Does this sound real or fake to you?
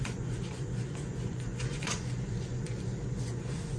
fake